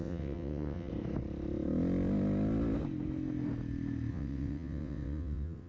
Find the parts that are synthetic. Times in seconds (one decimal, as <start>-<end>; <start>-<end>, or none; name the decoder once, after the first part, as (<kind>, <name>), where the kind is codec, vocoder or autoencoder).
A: 0.0-0.9 (vocoder, WaveNeXt); 4.1-5.7